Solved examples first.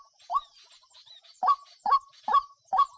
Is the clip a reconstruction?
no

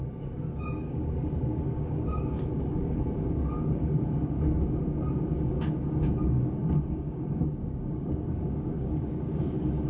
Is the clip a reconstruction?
yes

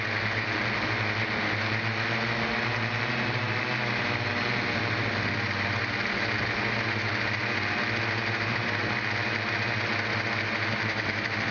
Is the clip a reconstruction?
no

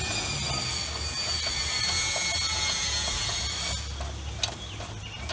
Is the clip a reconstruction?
no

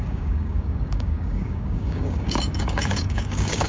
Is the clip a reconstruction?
yes